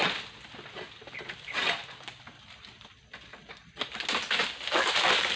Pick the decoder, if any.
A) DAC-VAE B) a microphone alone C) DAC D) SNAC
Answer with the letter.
B